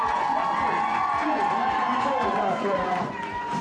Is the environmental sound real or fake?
fake